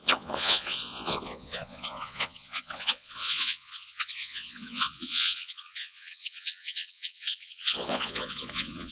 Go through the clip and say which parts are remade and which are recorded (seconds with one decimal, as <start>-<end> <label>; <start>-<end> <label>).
0.0-8.9 remade